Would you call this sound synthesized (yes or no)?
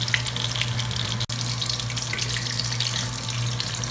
no